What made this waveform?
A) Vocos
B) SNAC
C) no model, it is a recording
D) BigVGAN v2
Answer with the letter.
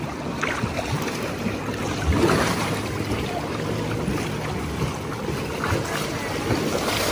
C